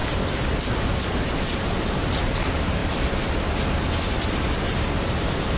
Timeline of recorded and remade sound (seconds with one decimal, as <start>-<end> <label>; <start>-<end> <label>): 0.0-5.6 recorded

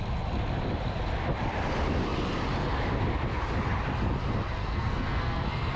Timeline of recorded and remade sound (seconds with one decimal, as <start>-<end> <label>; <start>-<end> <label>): 0.0-4.6 recorded; 4.6-5.8 remade

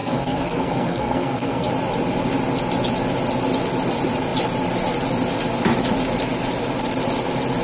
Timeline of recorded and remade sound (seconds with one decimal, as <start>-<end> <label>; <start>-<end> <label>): 0.0-1.7 remade; 1.7-7.6 recorded

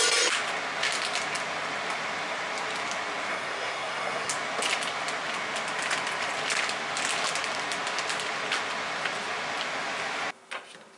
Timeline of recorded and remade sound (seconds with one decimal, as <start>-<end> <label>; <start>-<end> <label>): 0.0-3.3 recorded; 3.3-4.3 remade; 4.3-11.0 recorded

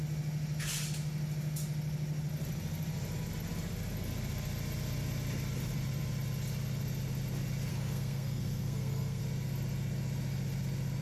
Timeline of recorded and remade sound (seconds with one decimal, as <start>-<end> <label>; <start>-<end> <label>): 0.0-7.7 recorded; 7.7-9.2 remade; 9.2-11.0 recorded

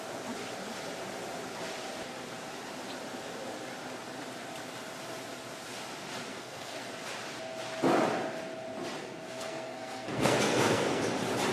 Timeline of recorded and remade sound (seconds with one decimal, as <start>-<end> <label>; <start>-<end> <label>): 0.0-6.3 recorded; 6.3-6.9 remade; 6.9-9.0 recorded; 9.0-11.0 remade; 11.0-11.5 recorded

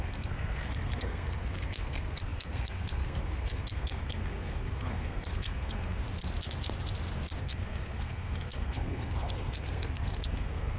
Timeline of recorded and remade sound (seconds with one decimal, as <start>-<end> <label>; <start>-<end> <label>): 0.0-6.0 remade; 6.0-7.4 recorded; 7.4-10.8 remade

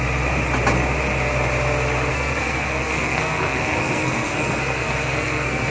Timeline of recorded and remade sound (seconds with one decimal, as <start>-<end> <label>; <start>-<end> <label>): 0.0-2.1 recorded; 2.1-5.7 remade